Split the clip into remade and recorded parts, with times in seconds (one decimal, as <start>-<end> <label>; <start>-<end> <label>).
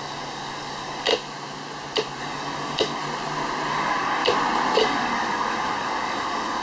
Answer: 0.0-1.1 remade; 1.1-2.2 recorded; 2.2-3.0 remade; 3.0-3.7 recorded; 3.7-4.2 remade; 4.2-4.8 recorded; 4.8-6.6 remade